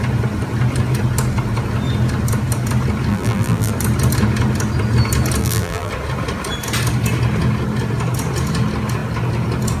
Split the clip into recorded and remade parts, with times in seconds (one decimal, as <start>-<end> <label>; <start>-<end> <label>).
0.0-3.1 recorded; 3.1-3.7 remade; 3.7-5.4 recorded; 5.4-5.9 remade; 5.9-9.8 recorded